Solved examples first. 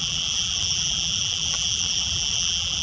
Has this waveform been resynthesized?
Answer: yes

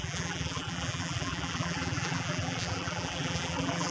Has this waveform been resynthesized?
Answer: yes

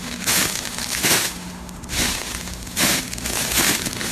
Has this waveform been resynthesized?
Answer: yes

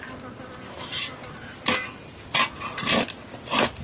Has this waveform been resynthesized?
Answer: no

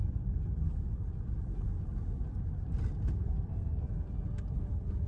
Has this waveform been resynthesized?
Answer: no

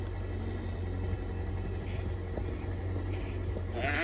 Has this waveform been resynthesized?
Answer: no